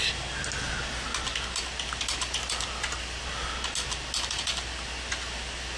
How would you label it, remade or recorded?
recorded